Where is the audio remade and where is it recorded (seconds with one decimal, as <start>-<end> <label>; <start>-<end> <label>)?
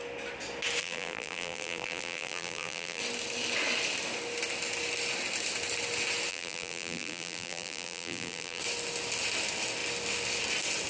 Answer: 0.0-0.8 recorded; 0.8-3.0 remade; 3.0-6.3 recorded; 6.3-8.6 remade; 8.6-10.9 recorded